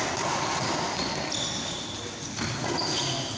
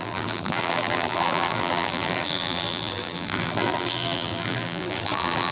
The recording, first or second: first